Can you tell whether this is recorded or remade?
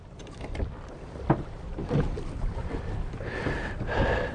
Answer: remade